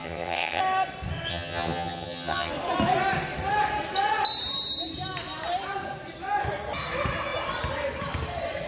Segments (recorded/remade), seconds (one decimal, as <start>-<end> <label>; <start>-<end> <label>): 0.0-0.6 remade; 0.6-1.3 recorded; 1.3-2.5 remade; 2.5-8.7 recorded